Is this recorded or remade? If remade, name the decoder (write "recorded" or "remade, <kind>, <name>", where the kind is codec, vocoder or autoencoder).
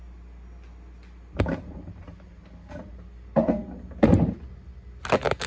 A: recorded